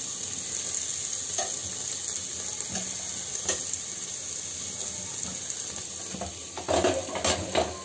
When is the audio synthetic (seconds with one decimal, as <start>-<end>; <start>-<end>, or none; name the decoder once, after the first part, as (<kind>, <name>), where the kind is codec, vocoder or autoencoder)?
none